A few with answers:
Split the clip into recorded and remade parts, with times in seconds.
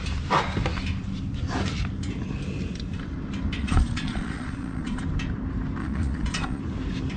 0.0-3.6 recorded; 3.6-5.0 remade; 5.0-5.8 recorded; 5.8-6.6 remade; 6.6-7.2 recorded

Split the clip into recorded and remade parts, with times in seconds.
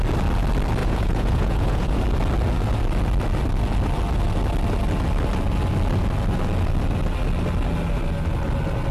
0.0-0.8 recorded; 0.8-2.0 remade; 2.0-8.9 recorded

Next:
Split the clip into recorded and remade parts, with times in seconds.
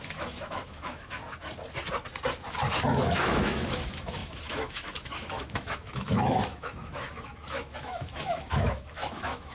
0.0-1.2 remade; 1.2-3.0 recorded; 3.0-9.5 remade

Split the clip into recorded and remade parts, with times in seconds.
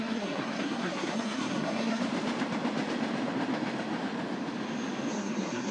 0.0-2.0 remade; 2.0-5.1 recorded; 5.1-5.7 remade